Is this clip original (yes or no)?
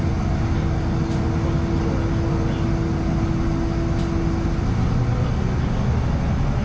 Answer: yes